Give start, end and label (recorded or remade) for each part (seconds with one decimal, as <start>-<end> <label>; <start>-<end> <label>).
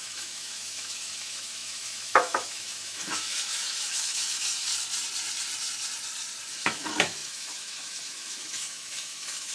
0.0-4.7 remade; 4.7-6.5 recorded; 6.5-9.5 remade